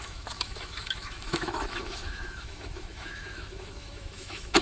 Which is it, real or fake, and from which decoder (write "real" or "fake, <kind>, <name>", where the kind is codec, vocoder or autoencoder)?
fake, autoencoder, DAC-VAE